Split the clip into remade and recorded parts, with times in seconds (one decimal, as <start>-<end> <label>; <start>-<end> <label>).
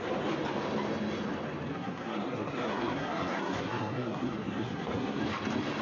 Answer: 0.0-1.7 recorded; 1.7-5.2 remade; 5.2-5.8 recorded